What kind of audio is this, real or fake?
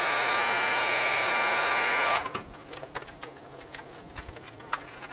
real